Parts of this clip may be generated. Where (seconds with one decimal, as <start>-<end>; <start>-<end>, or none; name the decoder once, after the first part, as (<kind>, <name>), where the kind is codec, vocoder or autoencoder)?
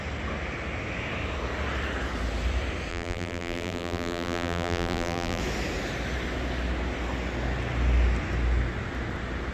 2.9-5.4 (vocoder, BigVGAN v2)